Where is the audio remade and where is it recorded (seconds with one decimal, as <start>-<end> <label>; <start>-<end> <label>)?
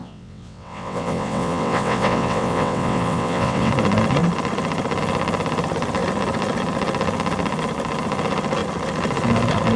0.0-3.7 remade; 3.7-9.8 recorded